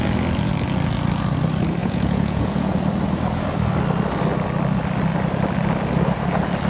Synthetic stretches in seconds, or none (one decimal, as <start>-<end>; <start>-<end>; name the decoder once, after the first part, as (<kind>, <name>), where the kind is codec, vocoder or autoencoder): 1.8-2.7 (vocoder, Vocos)